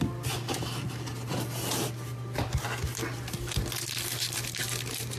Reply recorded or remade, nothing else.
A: recorded